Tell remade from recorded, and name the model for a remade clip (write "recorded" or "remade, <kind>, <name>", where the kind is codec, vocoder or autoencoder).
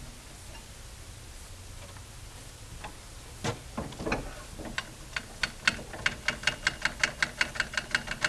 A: recorded